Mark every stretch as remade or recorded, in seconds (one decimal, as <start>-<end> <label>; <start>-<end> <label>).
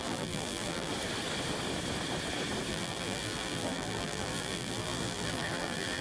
0.0-0.9 remade; 0.9-2.7 recorded; 2.7-6.0 remade